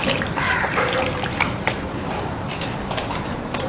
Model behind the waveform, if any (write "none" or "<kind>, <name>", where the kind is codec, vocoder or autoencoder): vocoder, BigVGAN v2